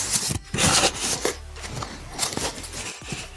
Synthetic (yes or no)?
no